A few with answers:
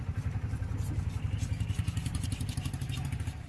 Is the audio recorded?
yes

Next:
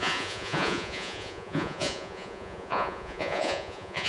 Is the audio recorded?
no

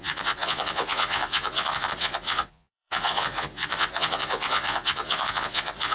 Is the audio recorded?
no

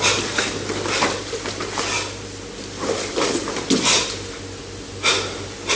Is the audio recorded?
yes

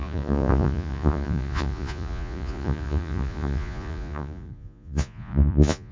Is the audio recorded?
no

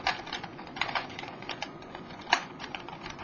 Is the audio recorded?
no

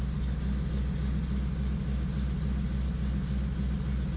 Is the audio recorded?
yes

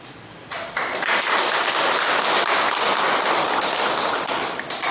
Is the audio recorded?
yes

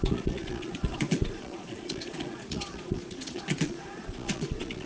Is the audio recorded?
no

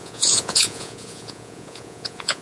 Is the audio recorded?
no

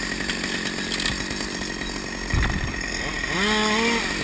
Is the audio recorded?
yes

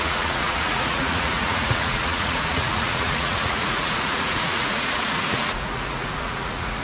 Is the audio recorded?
no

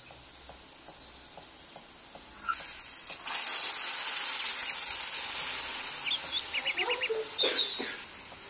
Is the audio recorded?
yes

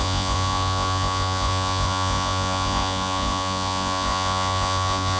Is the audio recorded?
no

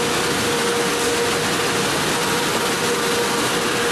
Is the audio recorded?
yes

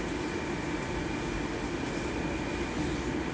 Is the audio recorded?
yes